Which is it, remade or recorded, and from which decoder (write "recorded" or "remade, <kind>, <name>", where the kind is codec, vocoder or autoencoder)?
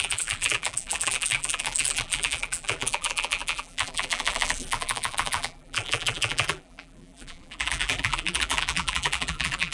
remade, vocoder, BigVGAN v2